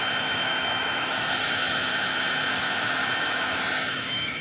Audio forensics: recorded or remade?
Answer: remade